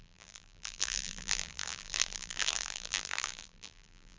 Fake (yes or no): yes